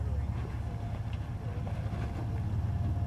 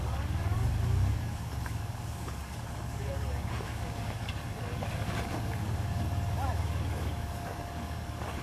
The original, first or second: first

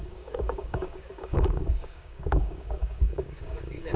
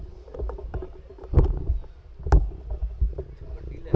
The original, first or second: second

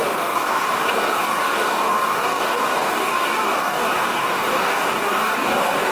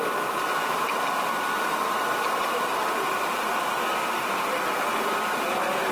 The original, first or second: second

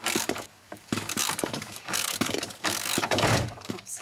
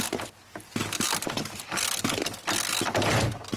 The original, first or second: second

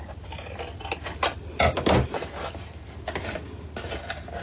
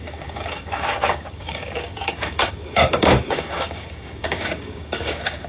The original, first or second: first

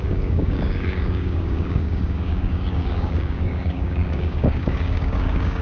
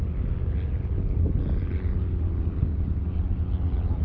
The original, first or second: second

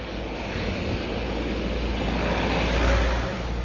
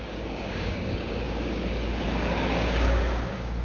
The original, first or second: first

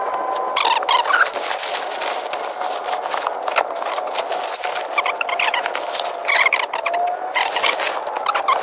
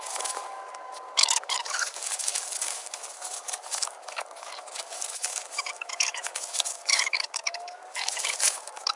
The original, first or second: first